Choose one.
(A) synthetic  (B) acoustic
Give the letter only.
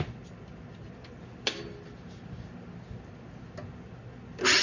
B